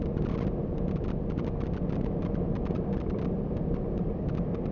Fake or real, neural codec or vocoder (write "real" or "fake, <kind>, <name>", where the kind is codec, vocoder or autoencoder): real